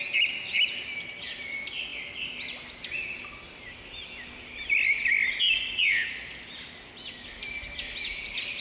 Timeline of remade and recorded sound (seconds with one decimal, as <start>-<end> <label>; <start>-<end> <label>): 0.0-8.6 recorded

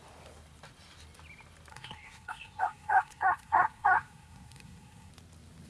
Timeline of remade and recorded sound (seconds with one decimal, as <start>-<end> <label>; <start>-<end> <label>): 0.0-1.7 recorded; 1.7-5.1 remade; 5.1-5.7 recorded

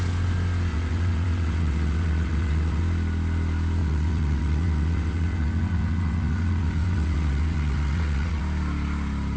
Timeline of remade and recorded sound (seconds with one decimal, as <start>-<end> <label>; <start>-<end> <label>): 0.0-0.7 recorded; 0.7-2.8 remade; 2.8-3.8 recorded; 3.8-8.4 remade; 8.4-9.4 recorded

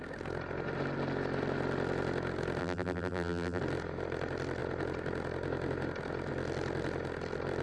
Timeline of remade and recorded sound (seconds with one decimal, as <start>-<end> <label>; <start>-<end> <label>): 0.0-2.6 recorded; 2.6-3.6 remade; 3.6-7.6 recorded

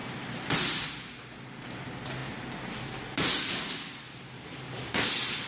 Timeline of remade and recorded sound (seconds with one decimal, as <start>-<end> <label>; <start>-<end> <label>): 0.0-5.5 recorded

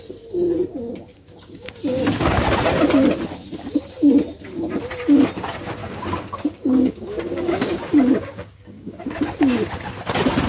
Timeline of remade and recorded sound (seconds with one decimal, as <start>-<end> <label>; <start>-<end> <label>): 0.0-1.1 recorded; 1.1-2.4 remade; 2.4-5.8 recorded; 5.8-9.2 remade; 9.2-10.5 recorded

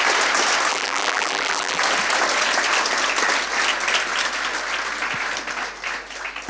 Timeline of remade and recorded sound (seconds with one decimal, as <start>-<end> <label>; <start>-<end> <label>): 0.0-0.7 recorded; 0.7-1.8 remade; 1.8-6.5 recorded

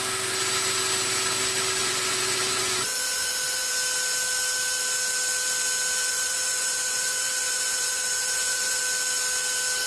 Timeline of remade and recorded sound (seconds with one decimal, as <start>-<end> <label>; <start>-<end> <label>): 0.0-1.8 recorded; 1.8-3.7 remade; 3.7-6.1 recorded; 6.1-8.8 remade; 8.8-9.9 recorded